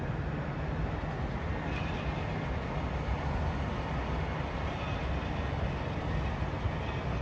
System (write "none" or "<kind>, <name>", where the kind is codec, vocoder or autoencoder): none